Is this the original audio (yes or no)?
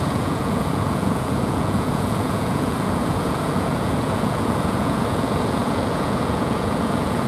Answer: no